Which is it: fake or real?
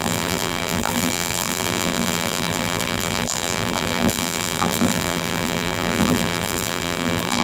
fake